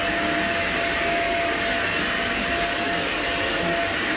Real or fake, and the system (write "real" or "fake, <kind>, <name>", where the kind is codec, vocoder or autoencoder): real